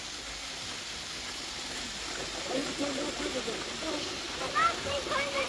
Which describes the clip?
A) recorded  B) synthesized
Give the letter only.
A